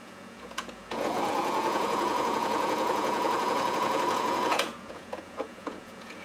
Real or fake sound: fake